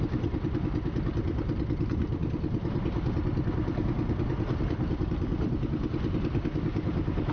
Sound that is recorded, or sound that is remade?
recorded